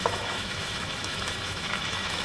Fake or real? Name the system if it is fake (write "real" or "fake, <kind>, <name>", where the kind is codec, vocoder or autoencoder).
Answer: fake, autoencoder, DAC-VAE